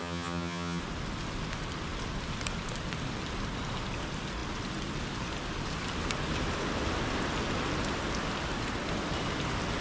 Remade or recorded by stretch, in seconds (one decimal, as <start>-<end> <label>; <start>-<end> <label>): 0.0-0.8 remade; 0.8-9.8 recorded